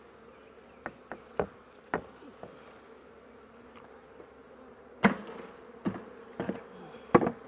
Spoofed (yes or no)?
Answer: no